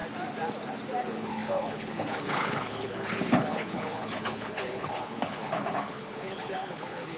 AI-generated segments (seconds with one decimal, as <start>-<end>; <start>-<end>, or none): 1.0-7.2